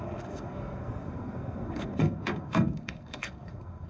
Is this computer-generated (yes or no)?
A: yes